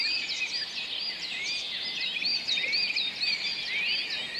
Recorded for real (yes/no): yes